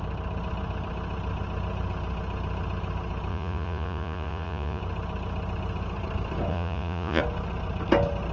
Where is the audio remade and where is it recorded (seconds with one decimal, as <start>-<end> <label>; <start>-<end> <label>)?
0.0-3.3 recorded; 3.3-4.8 remade; 4.8-6.5 recorded; 6.5-7.2 remade; 7.2-8.3 recorded